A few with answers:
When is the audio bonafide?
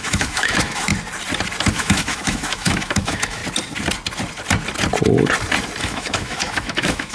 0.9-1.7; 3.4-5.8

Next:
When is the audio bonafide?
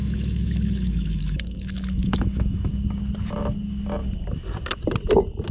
2.7-5.5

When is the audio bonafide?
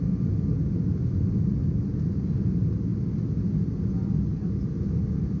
0.0-5.4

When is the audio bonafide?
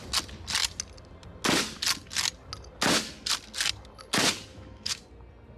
0.0-4.5; 5.0-5.6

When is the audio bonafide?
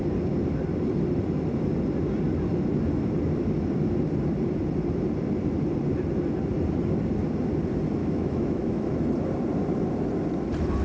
0.0-8.0; 9.1-10.8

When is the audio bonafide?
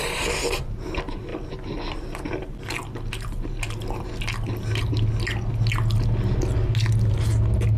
0.0-7.8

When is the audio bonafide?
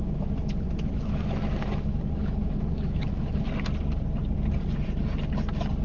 3.5-5.8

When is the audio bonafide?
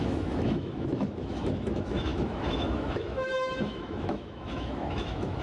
none